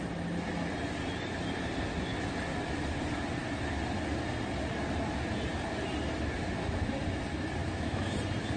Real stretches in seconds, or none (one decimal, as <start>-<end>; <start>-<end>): 0.0-7.6; 8.1-8.6

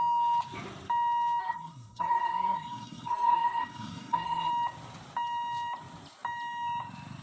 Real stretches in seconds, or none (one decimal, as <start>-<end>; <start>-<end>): 0.0-1.4; 4.5-7.2

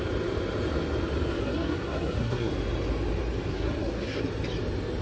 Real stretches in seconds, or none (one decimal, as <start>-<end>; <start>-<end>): 0.0-1.4; 2.5-3.5; 4.2-5.0

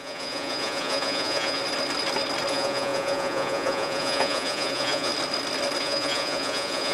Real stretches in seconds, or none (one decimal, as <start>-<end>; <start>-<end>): 1.6-2.5; 5.1-5.8

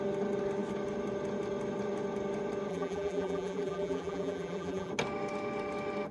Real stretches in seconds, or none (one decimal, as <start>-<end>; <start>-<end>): 0.0-2.7; 4.9-6.1